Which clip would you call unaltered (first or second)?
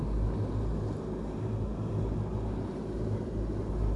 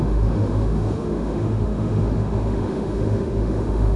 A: first